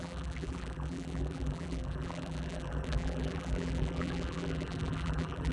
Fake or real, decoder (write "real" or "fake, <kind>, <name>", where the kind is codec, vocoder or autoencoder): fake, vocoder, BigVGAN v2